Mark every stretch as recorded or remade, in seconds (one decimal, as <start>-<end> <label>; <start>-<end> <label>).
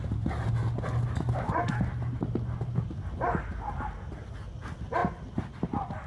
0.0-6.1 recorded